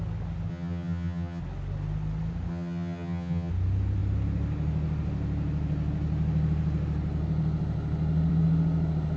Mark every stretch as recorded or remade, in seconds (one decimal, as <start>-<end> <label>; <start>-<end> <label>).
0.0-0.5 recorded; 0.5-1.4 remade; 1.4-2.5 recorded; 2.5-3.5 remade; 3.5-9.2 recorded